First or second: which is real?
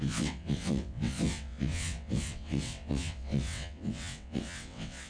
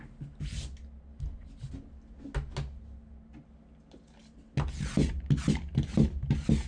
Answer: second